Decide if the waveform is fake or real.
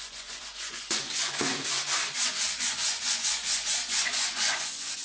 fake